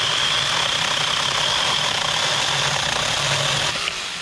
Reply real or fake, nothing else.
real